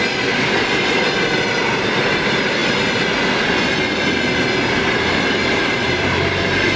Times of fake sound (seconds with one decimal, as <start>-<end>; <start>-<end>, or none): 1.5-2.6; 5.5-6.8